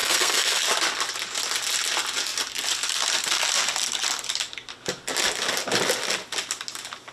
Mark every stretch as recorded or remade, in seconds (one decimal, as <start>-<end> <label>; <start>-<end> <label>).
0.0-0.6 remade; 0.6-7.1 recorded